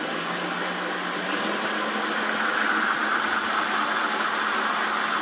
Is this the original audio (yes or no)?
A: yes